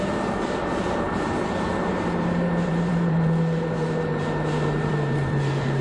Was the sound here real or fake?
fake